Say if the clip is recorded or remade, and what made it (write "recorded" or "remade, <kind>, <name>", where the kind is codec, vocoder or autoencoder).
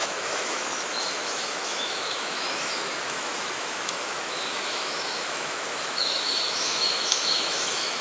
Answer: remade, autoencoder, DAC-VAE